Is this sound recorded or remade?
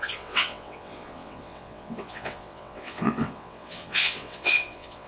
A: remade